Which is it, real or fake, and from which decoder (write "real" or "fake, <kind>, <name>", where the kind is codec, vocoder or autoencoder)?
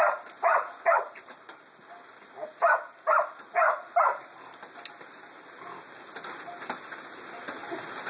real